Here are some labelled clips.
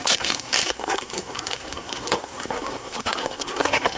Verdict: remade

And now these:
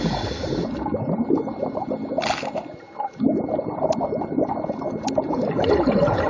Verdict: recorded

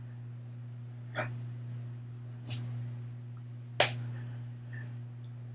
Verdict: recorded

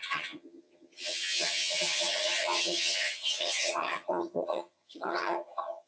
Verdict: remade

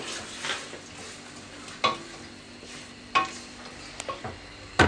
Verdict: recorded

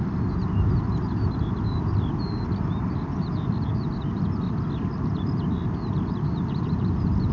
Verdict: recorded